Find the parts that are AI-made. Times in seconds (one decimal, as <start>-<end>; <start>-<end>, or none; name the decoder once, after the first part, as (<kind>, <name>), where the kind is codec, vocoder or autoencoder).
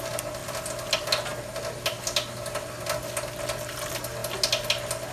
none